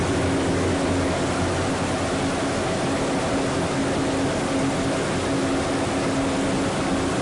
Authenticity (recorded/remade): recorded